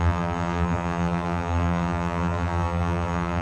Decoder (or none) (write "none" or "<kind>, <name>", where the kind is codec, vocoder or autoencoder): vocoder, BigVGAN v2